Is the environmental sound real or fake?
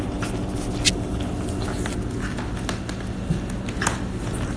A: real